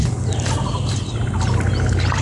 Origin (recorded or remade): recorded